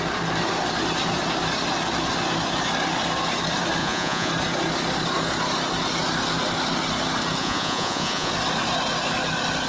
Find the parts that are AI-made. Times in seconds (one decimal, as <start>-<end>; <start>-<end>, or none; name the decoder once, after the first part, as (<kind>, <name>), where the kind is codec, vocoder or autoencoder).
3.8-4.3 (vocoder, Vocos); 7.4-8.3